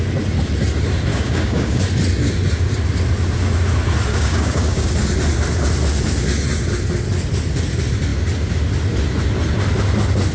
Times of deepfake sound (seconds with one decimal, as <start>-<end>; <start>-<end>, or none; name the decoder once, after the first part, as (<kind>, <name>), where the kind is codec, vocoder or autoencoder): 1.1-1.8 (codec, DAC); 4.1-4.9